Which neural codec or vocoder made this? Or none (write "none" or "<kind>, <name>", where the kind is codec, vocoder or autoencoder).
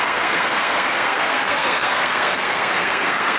codec, SNAC